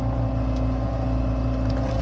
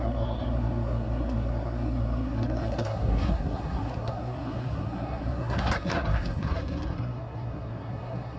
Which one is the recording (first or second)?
first